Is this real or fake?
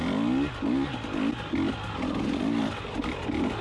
real